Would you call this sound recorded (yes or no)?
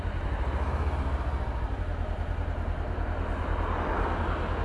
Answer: yes